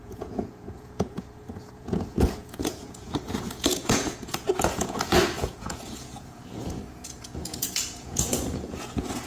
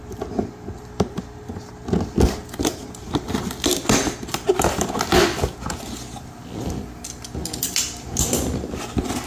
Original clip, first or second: second